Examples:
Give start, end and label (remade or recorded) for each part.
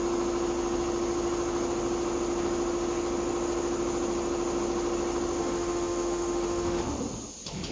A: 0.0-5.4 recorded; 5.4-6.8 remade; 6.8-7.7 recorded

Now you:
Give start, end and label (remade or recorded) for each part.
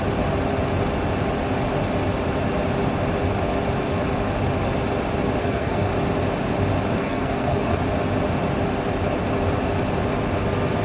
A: 0.0-5.4 recorded; 5.4-5.9 remade; 5.9-7.0 recorded; 7.0-7.8 remade; 7.8-10.8 recorded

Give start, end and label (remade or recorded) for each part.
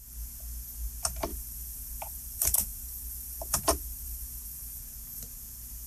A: 0.0-1.3 recorded; 1.3-4.8 remade; 4.8-5.9 recorded